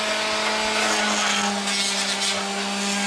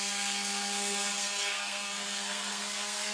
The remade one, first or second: second